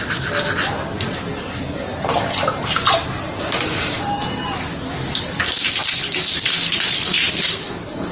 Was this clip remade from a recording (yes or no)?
no